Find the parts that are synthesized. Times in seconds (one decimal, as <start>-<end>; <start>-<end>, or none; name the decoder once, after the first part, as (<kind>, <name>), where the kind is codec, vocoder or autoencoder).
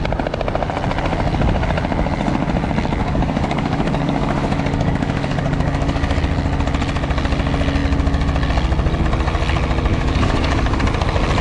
3.0-6.2 (codec, DAC); 9.9-10.8